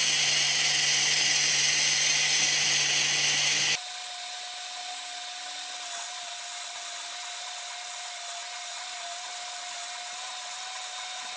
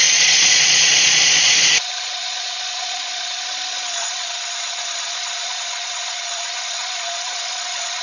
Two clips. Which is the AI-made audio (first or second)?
second